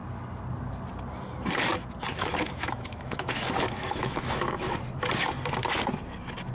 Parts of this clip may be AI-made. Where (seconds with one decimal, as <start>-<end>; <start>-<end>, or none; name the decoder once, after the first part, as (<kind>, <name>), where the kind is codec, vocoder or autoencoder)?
2.1-4.8 (autoencoder, DAC-VAE)